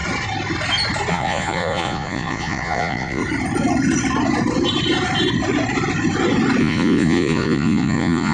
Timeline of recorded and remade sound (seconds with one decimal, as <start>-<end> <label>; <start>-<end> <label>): 0.0-1.1 recorded; 1.1-3.2 remade; 3.2-6.6 recorded; 6.6-8.3 remade

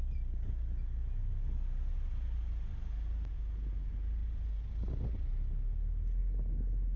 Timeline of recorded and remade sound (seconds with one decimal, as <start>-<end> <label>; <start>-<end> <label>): 0.0-7.0 recorded

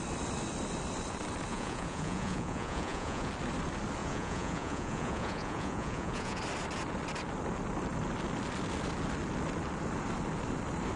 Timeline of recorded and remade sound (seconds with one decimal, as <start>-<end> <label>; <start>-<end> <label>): 0.0-1.5 recorded; 1.5-3.3 remade; 3.3-4.0 recorded; 4.0-6.4 remade; 6.4-11.0 recorded

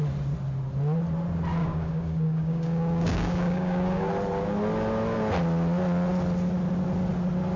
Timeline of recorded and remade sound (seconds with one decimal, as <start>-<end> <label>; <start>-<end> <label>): 0.0-1.6 recorded; 1.6-4.1 remade; 4.1-7.6 recorded

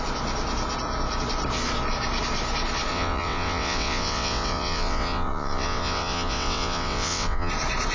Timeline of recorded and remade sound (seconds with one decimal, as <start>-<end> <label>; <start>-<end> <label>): 0.0-2.9 recorded; 2.9-7.5 remade; 7.5-7.9 recorded

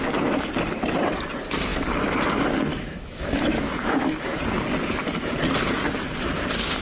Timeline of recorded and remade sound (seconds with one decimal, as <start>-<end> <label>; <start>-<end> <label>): 0.0-2.7 recorded; 2.7-4.4 remade; 4.4-6.8 recorded